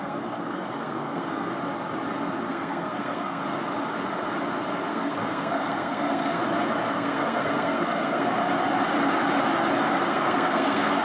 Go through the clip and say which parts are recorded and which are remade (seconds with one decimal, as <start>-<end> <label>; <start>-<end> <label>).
0.0-1.5 remade; 1.5-2.5 recorded; 2.5-3.4 remade; 3.4-4.9 recorded; 4.9-6.4 remade; 6.4-6.9 recorded; 6.9-8.4 remade; 8.4-9.9 recorded; 9.9-11.0 remade